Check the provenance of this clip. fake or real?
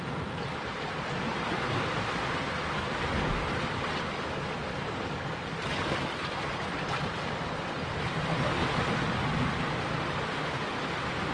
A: real